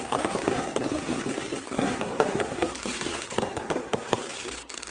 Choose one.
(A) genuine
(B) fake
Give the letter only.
B